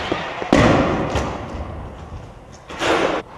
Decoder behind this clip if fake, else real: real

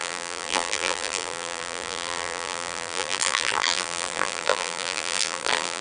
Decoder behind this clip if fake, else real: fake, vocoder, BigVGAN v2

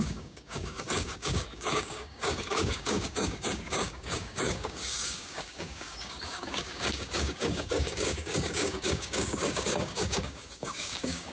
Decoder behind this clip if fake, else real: fake, codec, DAC